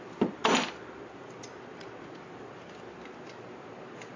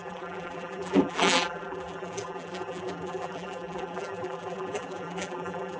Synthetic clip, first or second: second